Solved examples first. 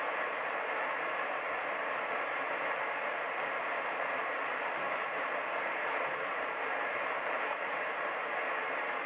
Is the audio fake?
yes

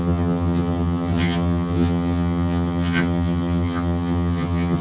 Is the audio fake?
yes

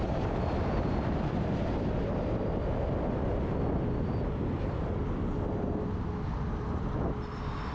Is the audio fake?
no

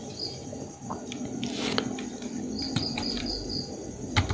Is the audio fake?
no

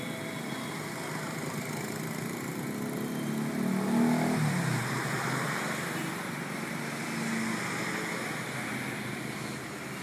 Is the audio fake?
no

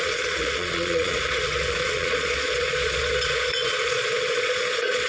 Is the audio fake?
yes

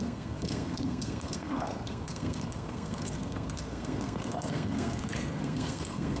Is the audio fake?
yes